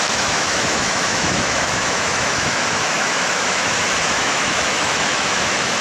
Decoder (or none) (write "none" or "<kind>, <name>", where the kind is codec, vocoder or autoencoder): autoencoder, DAC-VAE